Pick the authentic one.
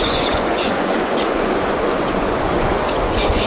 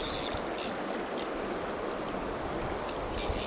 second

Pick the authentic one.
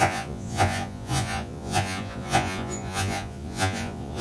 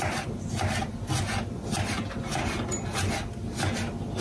second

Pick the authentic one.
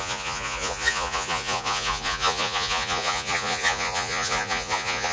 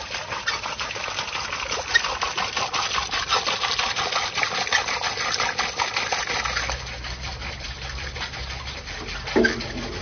second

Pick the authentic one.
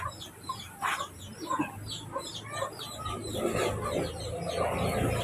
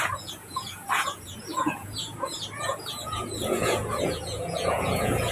first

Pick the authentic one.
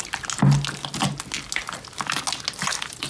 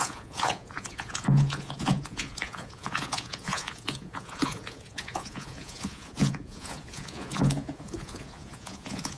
first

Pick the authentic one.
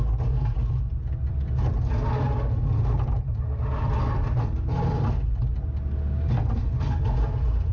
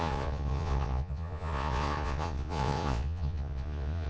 first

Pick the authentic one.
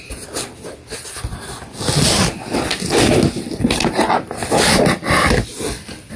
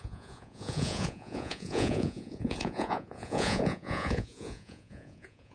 first